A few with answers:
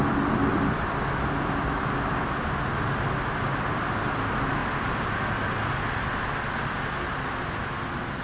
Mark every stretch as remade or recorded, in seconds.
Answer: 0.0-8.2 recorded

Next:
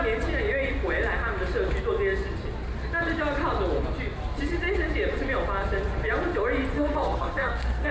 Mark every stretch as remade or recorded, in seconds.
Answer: 0.0-6.7 recorded; 6.7-7.9 remade

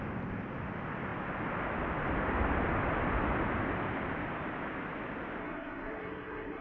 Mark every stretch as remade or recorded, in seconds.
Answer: 0.0-5.4 recorded; 5.4-6.6 remade

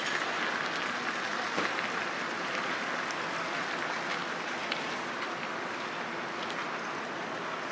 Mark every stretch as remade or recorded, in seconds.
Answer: 0.0-7.7 recorded

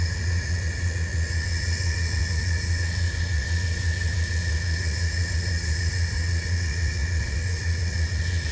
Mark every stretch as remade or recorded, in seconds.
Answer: 0.0-8.5 remade

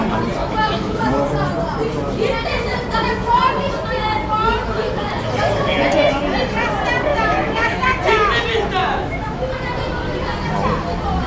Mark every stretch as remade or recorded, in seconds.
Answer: 0.0-0.4 recorded; 0.4-1.1 remade; 1.1-7.1 recorded; 7.1-7.8 remade; 7.8-8.8 recorded; 8.8-9.5 remade; 9.5-11.3 recorded

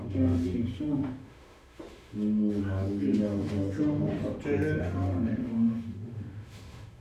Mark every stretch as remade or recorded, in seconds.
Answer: 0.0-2.6 remade; 2.6-3.2 recorded; 3.2-4.2 remade; 4.2-4.8 recorded; 4.8-7.0 remade